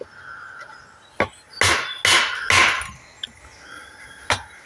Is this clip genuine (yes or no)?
yes